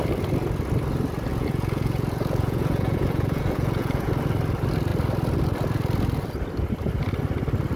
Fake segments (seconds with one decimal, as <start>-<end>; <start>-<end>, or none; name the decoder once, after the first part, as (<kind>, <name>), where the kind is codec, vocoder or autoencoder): 1.3-4.1 (vocoder, Vocos)